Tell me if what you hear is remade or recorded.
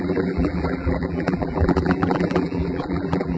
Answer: remade